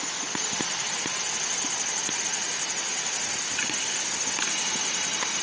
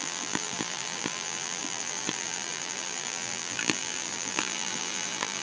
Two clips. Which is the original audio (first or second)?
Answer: first